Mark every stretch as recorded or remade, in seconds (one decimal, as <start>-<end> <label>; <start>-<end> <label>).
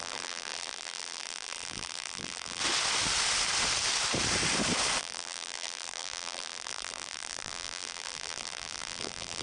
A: 0.0-2.6 remade; 2.6-5.0 recorded; 5.0-9.4 remade